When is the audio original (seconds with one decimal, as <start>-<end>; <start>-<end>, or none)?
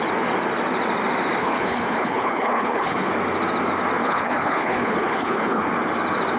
0.0-1.4; 3.1-4.0; 5.6-6.4